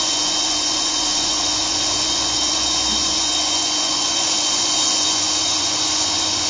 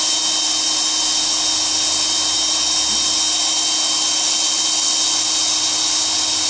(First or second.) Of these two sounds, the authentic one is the second